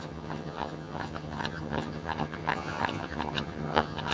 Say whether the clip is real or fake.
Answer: fake